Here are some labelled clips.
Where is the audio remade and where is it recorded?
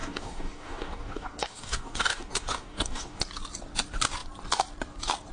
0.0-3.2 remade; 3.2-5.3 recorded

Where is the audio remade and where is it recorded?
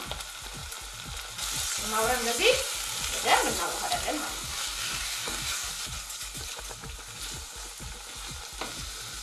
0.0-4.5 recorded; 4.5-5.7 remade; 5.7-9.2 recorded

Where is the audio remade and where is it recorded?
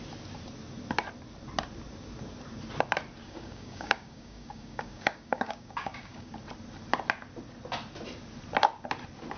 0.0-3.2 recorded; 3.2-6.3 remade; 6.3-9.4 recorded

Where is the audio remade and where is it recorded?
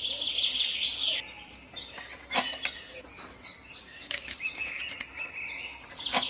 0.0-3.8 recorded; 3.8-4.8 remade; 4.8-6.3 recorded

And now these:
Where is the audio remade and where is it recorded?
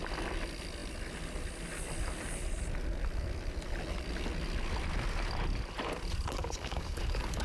0.0-6.4 recorded; 6.4-7.4 remade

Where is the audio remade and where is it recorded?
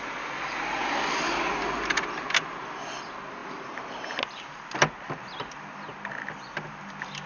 0.0-7.3 recorded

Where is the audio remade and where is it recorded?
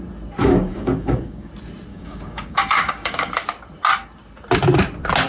0.0-0.4 recorded; 0.4-1.5 remade; 1.5-1.9 recorded; 1.9-3.3 remade; 3.3-5.3 recorded